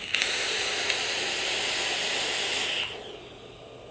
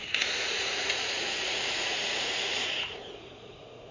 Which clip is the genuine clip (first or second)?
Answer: first